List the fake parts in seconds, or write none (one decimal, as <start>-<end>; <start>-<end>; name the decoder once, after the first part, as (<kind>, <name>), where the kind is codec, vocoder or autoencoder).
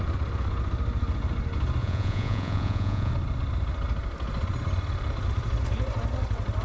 1.8-3.1 (vocoder, Vocos)